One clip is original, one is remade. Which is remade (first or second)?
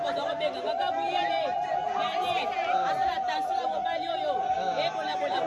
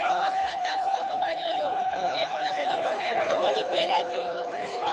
second